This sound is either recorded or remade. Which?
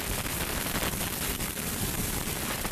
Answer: remade